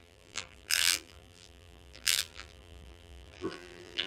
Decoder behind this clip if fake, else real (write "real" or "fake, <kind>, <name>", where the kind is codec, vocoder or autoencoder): fake, vocoder, BigVGAN v2